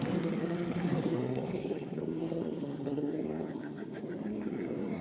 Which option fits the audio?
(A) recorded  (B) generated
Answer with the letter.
B